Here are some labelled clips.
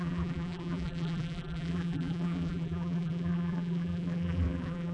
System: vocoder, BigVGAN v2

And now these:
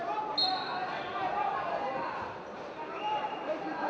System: none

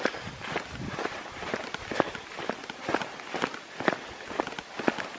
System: none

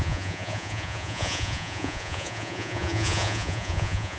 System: vocoder, Vocos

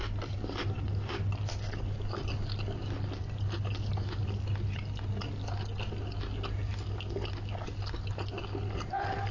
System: none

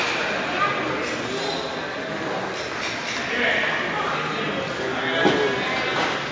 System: none